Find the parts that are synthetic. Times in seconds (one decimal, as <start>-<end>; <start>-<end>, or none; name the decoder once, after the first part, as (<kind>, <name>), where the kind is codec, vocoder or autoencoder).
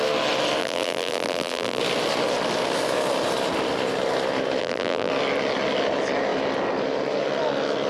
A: 0.6-1.8 (vocoder, BigVGAN v2); 4.6-5.1